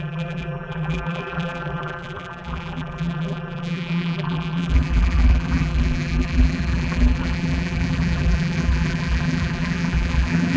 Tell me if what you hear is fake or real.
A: fake